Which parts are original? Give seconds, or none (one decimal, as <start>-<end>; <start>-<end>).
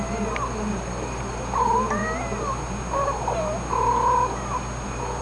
2.0-5.2